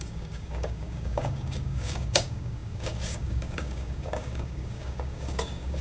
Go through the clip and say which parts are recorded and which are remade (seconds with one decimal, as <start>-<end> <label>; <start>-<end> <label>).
0.0-5.8 remade